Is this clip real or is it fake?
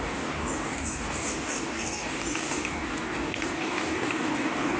fake